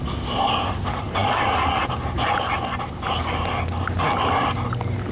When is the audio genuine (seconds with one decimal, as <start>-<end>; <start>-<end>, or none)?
0.0-5.1